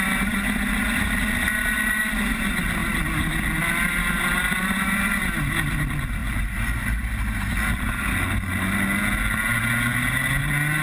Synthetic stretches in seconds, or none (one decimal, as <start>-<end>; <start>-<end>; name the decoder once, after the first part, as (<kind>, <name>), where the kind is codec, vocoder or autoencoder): none